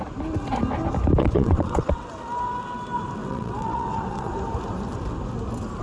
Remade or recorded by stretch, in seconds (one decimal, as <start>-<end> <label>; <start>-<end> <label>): 0.0-1.2 recorded; 1.2-2.1 remade; 2.1-3.2 recorded; 3.2-4.3 remade; 4.3-5.8 recorded

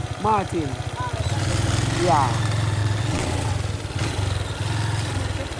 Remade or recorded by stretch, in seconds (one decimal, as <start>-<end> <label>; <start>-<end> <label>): 0.0-2.8 recorded; 2.8-3.5 remade; 3.5-5.6 recorded

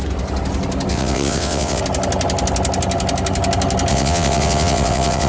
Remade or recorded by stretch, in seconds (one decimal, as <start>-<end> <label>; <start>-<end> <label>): 0.0-0.9 recorded; 0.9-1.8 remade; 1.8-3.9 recorded; 3.9-5.3 remade

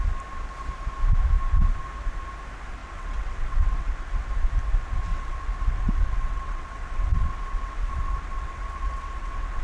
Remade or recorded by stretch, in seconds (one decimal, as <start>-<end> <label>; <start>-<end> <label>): 0.0-2.8 recorded; 2.8-4.3 remade; 4.3-5.1 recorded; 5.1-9.6 remade